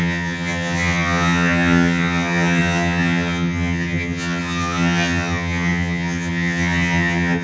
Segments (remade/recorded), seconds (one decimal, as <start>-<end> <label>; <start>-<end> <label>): 0.0-7.4 remade